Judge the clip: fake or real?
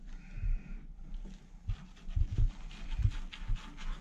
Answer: real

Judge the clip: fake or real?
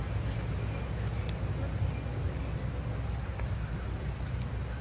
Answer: real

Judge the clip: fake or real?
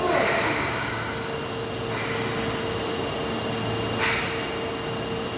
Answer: real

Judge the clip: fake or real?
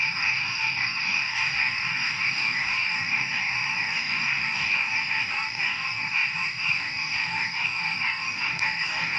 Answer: fake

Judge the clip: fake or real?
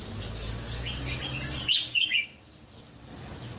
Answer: real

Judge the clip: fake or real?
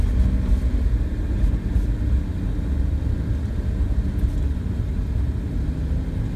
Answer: real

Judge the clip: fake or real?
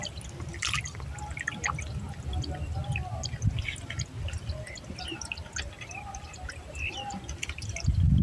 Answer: real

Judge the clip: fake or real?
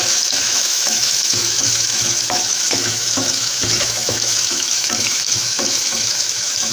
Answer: fake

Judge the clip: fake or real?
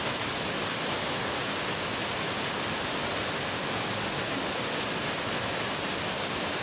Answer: real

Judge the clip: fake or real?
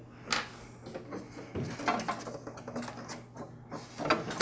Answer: real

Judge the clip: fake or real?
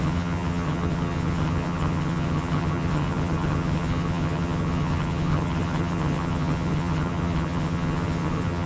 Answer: fake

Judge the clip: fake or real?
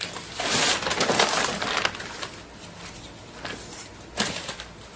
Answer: real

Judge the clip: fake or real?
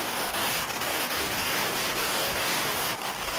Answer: fake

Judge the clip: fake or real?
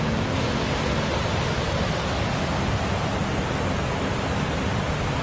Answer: real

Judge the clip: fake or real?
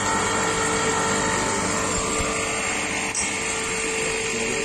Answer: real